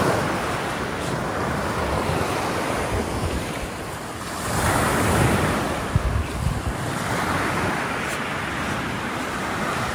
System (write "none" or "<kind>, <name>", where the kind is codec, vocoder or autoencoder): vocoder, BigVGAN v2